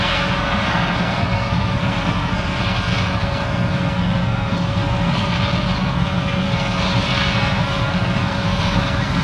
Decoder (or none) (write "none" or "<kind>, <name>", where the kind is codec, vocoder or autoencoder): codec, SNAC